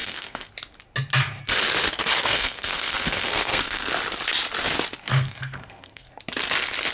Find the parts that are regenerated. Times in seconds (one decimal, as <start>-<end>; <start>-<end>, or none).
0.0-0.5; 2.2-3.9; 5.1-6.1